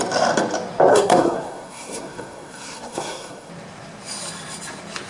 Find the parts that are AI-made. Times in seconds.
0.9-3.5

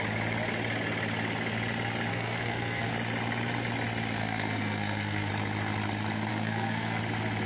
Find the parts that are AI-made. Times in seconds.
2.1-2.9; 4.2-5.3; 6.3-7.0

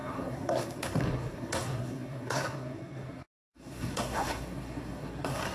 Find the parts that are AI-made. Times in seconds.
0.0-5.5

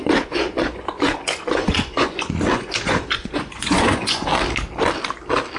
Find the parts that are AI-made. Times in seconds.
0.0-4.3

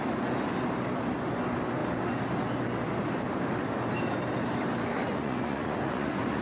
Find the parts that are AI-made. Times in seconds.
5.1-6.4